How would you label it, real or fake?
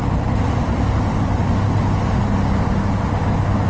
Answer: real